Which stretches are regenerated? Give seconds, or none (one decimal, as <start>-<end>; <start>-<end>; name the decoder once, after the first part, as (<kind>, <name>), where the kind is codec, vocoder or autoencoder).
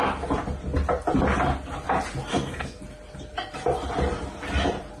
2.3-2.8 (codec, SNAC)